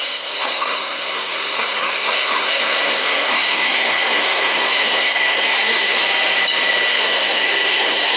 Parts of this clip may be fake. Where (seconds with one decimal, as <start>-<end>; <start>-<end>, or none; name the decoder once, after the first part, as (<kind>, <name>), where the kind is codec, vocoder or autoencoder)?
0.0-6.0 (codec, SNAC); 6.9-8.2